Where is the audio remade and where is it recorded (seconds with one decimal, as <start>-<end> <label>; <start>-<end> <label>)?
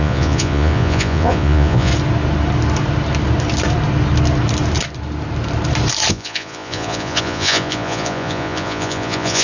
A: 0.0-1.9 remade; 1.9-6.1 recorded; 6.1-9.4 remade